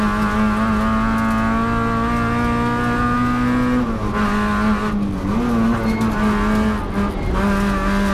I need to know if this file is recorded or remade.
recorded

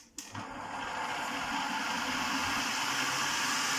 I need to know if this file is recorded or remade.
recorded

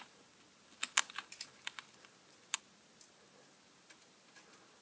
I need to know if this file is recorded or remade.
recorded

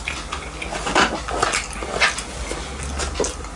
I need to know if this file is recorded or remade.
recorded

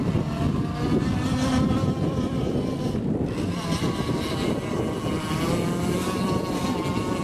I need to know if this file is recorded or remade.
recorded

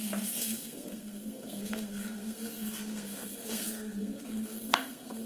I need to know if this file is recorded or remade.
remade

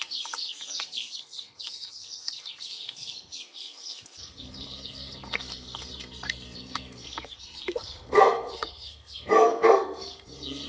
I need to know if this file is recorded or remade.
remade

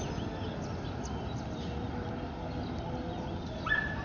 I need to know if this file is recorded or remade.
recorded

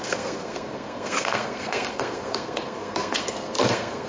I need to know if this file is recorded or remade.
remade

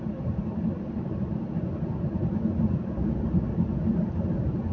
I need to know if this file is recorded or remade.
recorded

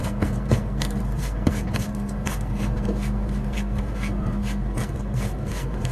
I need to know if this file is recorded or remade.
remade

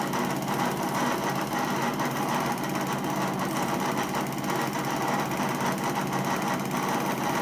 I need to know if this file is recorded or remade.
recorded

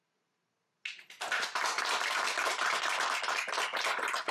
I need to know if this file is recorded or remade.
recorded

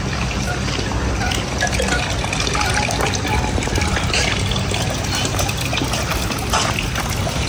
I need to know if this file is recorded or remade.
recorded